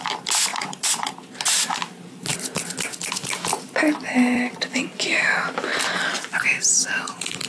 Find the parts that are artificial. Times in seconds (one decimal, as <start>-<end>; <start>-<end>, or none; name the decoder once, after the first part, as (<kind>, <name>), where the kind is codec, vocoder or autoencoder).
0.5-1.1 (vocoder, WaveNeXt)